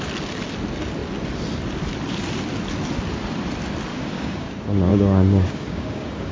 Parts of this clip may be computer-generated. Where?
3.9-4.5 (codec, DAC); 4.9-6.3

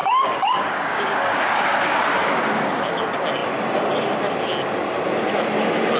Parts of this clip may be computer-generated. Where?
0.0-1.4 (codec, DAC); 2.2-2.9

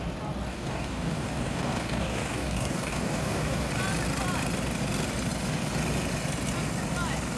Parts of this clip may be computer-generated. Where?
0.5-3.7 (codec, DAC)

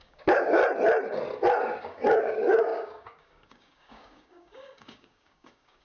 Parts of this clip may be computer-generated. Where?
0.0-0.6 (codec, DAC); 1.8-5.8